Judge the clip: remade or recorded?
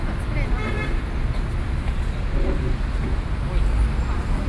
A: recorded